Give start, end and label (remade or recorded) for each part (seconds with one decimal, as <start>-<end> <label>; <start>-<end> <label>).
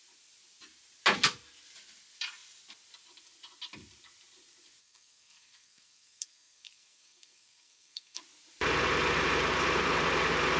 0.0-4.8 recorded; 4.8-8.2 remade; 8.2-10.6 recorded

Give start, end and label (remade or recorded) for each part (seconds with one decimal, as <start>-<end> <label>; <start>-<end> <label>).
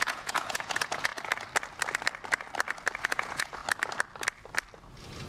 0.0-1.1 remade; 1.1-3.0 recorded; 3.0-3.6 remade; 3.6-5.3 recorded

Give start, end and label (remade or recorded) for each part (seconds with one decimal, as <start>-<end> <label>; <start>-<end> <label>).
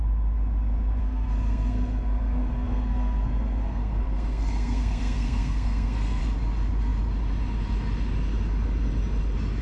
0.0-1.0 recorded; 1.0-6.2 remade; 6.2-9.6 recorded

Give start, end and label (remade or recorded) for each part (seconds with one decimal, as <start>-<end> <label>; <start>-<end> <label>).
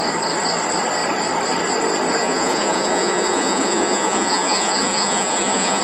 0.0-2.2 recorded; 2.2-5.8 remade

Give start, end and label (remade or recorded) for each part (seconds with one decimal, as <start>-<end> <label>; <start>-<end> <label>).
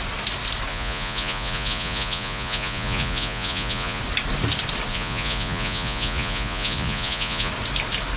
0.0-0.7 recorded; 0.7-4.0 remade; 4.0-4.9 recorded; 4.9-7.5 remade; 7.5-8.2 recorded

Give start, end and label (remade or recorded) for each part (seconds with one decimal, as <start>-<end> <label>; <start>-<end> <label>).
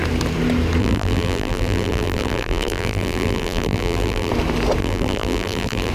0.0-0.8 recorded; 0.8-4.3 remade; 4.3-4.8 recorded; 4.8-5.9 remade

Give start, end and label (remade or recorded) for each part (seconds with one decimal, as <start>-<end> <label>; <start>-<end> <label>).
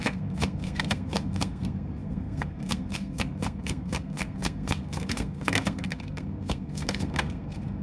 0.0-7.8 remade